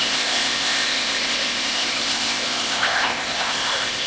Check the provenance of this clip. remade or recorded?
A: remade